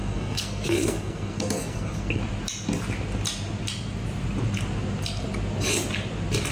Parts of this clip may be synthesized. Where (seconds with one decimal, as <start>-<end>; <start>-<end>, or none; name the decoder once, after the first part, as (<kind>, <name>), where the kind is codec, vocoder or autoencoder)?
0.0-2.2 (codec, SNAC)